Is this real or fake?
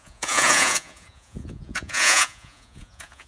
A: fake